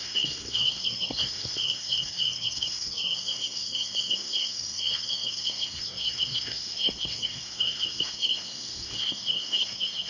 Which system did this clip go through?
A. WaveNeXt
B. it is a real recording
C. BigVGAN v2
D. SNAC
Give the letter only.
D